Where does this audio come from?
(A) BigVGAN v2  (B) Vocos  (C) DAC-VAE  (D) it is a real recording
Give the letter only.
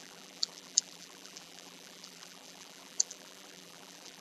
A